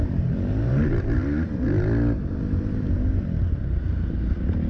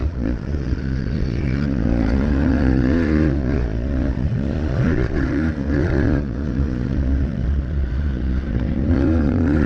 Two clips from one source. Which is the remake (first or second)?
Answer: second